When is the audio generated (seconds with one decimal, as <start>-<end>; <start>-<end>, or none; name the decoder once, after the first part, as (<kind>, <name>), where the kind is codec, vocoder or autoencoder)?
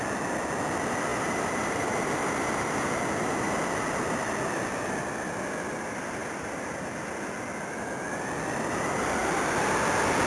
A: 1.1-2.9 (vocoder, BigVGAN v2); 6.2-7.0